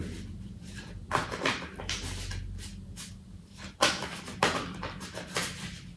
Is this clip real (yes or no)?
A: yes